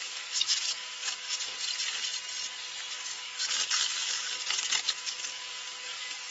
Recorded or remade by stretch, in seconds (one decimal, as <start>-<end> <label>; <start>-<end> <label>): 0.0-1.5 remade; 1.5-2.9 recorded; 2.9-6.3 remade